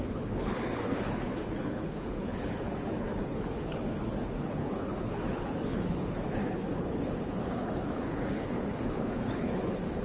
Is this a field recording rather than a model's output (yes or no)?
no